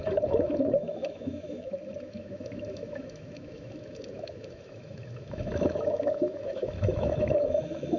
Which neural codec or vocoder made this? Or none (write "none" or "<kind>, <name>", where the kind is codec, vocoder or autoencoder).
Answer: autoencoder, DAC-VAE